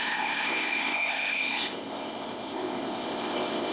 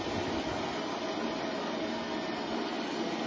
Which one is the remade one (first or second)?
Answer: first